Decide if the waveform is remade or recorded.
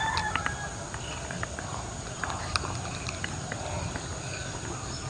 recorded